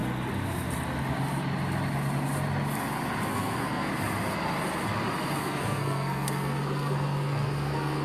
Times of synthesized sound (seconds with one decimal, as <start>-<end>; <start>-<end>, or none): 3.3-3.9; 5.4-8.0